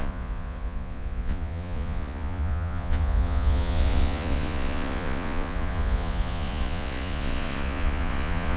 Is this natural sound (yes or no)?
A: no